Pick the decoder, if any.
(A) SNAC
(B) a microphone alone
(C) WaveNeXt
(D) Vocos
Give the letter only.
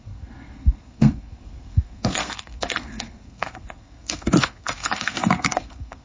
A